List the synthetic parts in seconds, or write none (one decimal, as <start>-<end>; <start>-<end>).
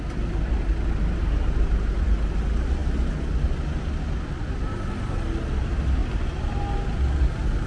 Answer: none